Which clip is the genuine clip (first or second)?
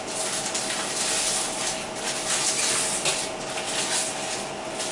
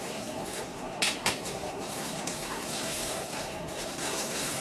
first